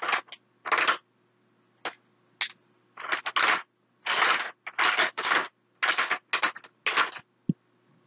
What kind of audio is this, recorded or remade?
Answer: recorded